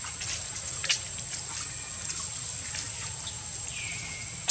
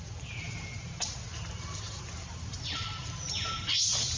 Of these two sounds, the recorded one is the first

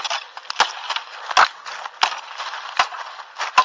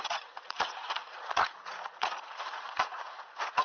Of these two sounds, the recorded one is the first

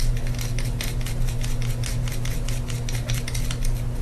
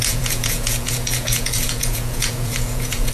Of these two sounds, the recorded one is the first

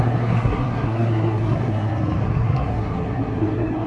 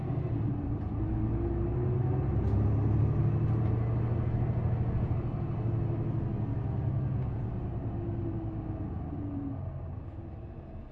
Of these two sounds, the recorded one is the second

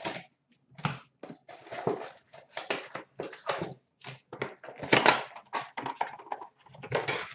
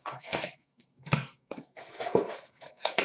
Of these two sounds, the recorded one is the first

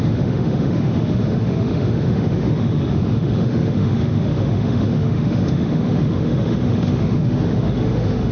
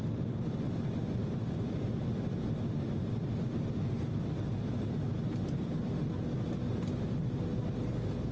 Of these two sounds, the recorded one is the second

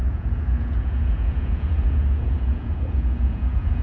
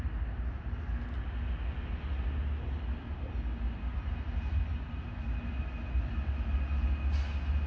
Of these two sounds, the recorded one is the second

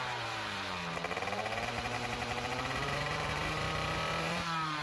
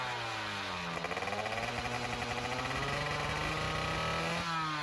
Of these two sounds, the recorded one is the second